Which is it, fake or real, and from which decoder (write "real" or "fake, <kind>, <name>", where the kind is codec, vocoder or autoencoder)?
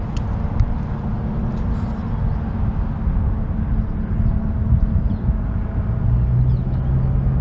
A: real